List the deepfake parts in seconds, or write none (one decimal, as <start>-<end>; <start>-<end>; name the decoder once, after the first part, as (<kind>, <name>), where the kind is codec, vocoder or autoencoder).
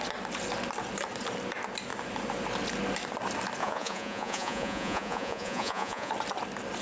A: 3.6-6.1 (vocoder, Vocos)